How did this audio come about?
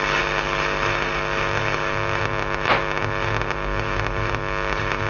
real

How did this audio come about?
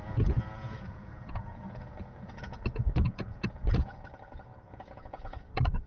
fake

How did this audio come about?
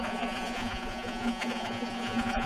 fake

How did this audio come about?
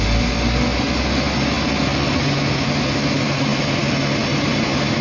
real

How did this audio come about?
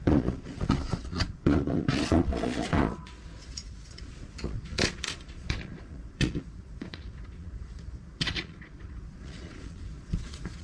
fake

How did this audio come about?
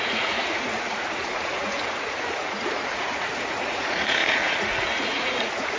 fake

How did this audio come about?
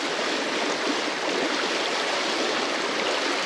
real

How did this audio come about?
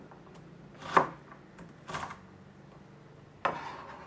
real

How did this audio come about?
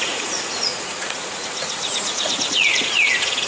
fake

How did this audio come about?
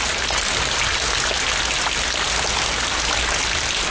real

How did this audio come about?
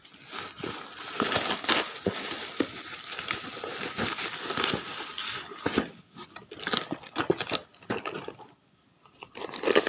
real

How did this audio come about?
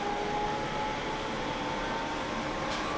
real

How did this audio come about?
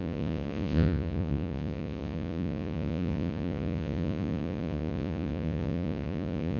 fake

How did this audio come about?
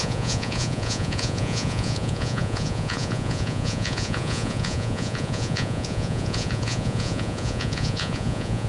fake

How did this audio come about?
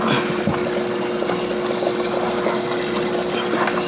real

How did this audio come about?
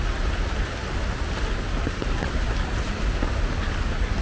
real